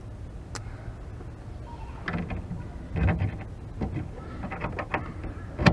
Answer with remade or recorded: recorded